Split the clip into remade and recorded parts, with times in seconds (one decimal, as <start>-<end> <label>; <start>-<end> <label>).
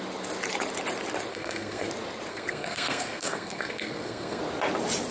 0.0-1.3 recorded; 1.3-1.9 remade; 1.9-2.3 recorded; 2.3-4.4 remade; 4.4-5.1 recorded